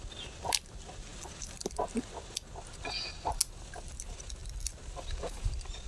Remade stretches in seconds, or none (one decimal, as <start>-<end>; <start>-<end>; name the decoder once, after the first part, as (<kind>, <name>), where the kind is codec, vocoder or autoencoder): none